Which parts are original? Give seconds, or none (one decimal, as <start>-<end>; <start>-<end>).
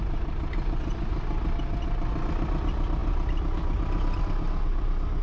0.0-5.2